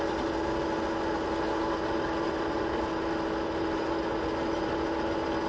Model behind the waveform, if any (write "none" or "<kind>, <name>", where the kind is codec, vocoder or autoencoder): none